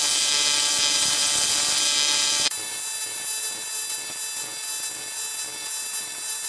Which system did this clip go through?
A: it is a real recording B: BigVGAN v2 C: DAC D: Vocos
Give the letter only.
B